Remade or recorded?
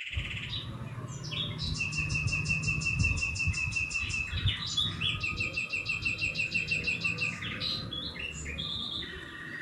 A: recorded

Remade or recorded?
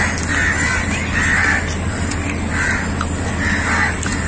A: recorded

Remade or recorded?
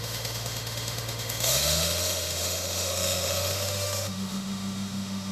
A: remade